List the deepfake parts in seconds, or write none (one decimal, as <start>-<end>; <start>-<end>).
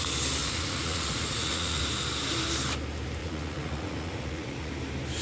0.4-1.8; 3.2-4.7